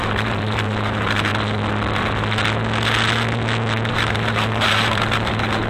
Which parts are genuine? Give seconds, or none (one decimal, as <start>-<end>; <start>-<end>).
1.3-3.9